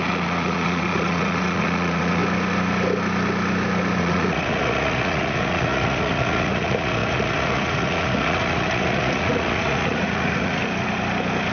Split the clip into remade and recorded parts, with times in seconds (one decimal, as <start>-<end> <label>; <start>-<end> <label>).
0.0-2.2 remade; 2.2-4.0 recorded; 4.0-10.6 remade; 10.6-11.5 recorded